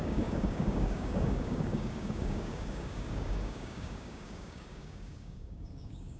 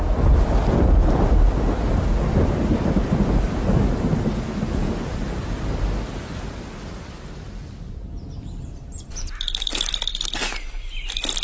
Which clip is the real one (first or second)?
second